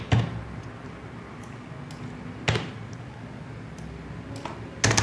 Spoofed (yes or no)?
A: no